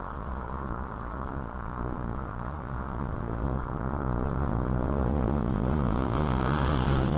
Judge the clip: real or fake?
fake